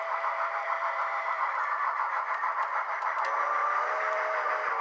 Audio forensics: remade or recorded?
remade